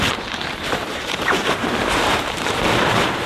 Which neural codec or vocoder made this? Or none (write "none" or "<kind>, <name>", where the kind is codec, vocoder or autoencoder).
vocoder, BigVGAN v2